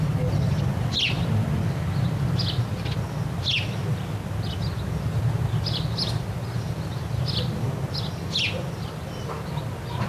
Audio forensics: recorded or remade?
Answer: recorded